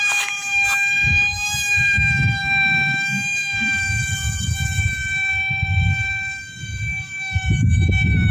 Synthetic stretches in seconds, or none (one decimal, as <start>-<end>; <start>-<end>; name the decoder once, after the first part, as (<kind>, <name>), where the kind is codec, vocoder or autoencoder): 0.0-4.0 (autoencoder, DAC-VAE); 5.3-8.3